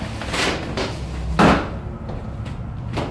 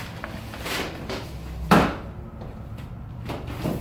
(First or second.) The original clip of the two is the first